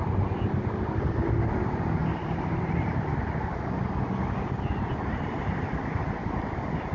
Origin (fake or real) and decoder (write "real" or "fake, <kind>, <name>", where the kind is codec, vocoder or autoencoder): real